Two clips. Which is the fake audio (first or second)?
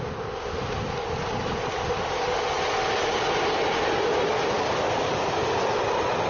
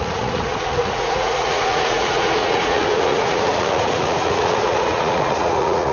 second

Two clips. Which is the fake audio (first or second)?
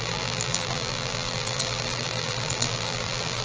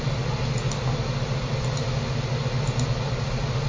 first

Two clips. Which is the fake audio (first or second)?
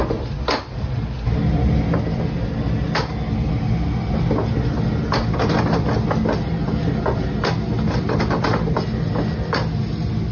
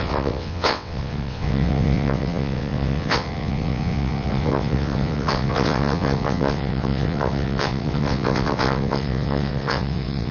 second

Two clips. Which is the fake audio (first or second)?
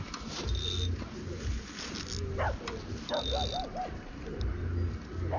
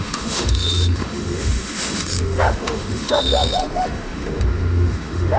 second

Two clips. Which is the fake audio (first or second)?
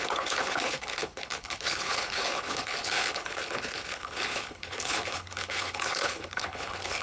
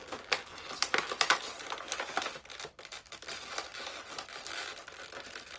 first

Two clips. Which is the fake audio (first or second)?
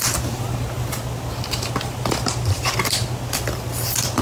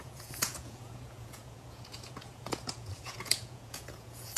second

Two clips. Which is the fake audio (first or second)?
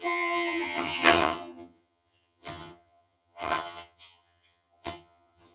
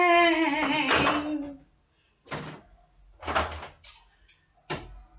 first